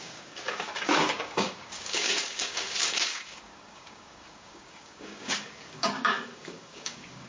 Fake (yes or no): yes